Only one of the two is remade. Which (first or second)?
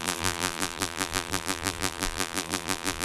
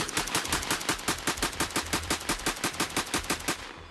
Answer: first